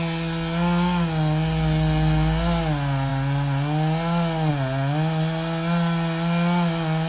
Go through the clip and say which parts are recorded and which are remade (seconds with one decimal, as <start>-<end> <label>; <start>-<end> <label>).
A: 0.0-7.1 recorded